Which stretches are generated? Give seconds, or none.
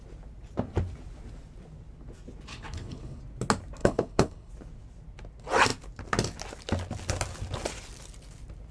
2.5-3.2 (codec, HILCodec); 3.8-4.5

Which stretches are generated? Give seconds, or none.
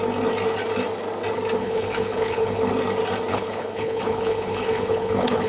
1.6-2.7 (codec, HILCodec); 3.3-5.5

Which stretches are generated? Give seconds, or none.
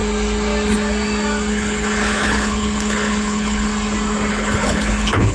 1.5-3.7 (codec, HILCodec); 4.3-5.3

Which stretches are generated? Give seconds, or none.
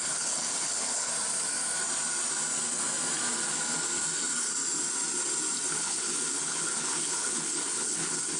0.0-1.1 (codec, HILCodec); 5.7-8.4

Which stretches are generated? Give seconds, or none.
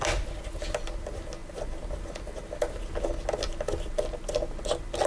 none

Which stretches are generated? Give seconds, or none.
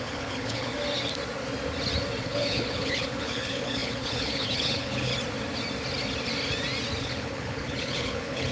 0.0-0.7 (codec, HILCodec); 2.2-5.1; 7.0-8.5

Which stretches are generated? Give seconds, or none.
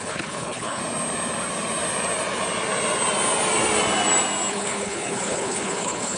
0.0-0.8 (codec, HILCodec); 4.5-6.2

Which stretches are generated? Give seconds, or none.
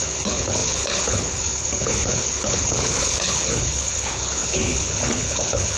0.0-5.8 (codec, HILCodec)